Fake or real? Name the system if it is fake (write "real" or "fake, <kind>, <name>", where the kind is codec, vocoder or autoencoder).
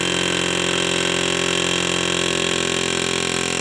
real